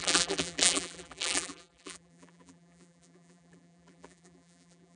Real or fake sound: fake